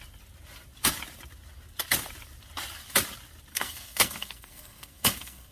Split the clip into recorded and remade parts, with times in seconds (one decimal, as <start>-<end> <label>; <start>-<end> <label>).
0.0-3.5 recorded; 3.5-5.5 remade